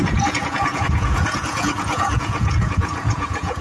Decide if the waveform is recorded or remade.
remade